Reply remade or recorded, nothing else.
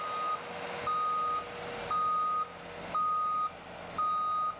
recorded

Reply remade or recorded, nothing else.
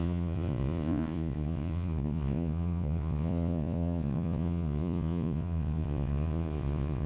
remade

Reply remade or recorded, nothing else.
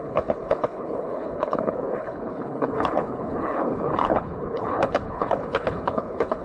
remade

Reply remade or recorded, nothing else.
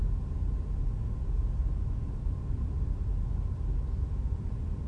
recorded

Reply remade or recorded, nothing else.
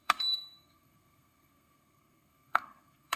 remade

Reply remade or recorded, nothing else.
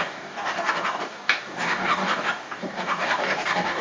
remade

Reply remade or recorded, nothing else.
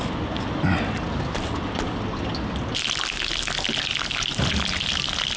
recorded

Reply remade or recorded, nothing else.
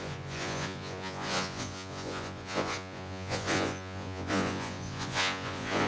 remade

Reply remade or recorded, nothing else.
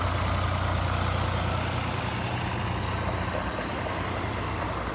recorded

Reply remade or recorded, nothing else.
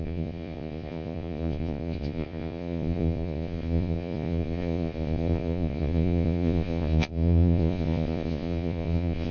remade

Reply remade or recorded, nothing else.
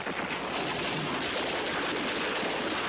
recorded